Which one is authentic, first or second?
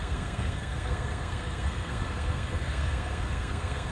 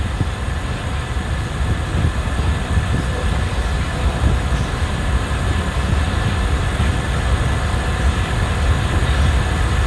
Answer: second